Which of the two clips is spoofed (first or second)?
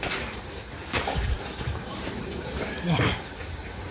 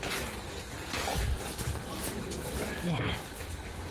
first